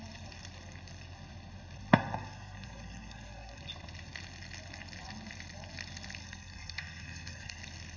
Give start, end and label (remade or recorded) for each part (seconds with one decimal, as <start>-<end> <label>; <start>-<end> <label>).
0.0-1.9 recorded; 1.9-3.6 remade; 3.6-6.2 recorded; 6.2-7.6 remade; 7.6-8.0 recorded